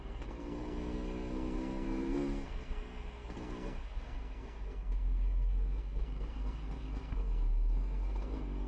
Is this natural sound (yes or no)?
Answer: no